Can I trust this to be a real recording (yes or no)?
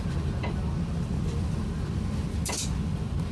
yes